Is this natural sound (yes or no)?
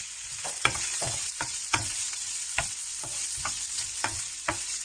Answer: no